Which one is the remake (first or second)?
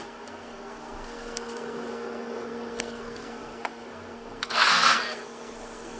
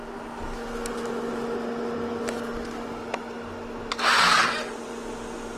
first